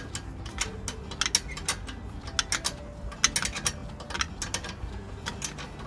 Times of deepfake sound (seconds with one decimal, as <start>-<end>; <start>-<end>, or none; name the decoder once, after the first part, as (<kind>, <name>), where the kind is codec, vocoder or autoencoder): none